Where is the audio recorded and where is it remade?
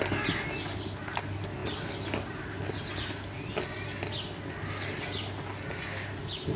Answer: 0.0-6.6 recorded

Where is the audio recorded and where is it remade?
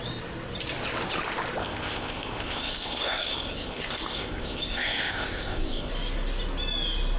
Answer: 0.0-1.6 recorded; 1.6-5.9 remade; 5.9-7.2 recorded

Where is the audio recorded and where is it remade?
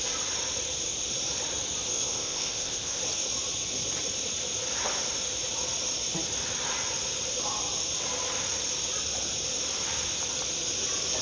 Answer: 0.0-1.9 recorded; 1.9-3.0 remade; 3.0-11.2 recorded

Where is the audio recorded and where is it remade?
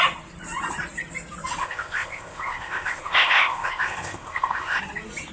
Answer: 0.0-1.6 recorded; 1.6-4.8 remade; 4.8-5.3 recorded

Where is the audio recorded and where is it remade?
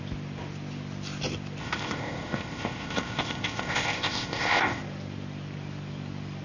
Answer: 0.0-1.6 recorded; 1.6-4.8 remade; 4.8-6.4 recorded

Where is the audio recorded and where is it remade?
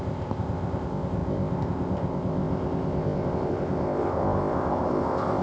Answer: 0.0-5.4 remade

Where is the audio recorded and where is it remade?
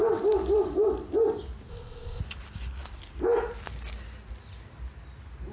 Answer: 0.0-1.7 recorded; 1.7-2.2 remade; 2.2-5.5 recorded